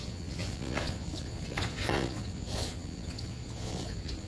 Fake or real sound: fake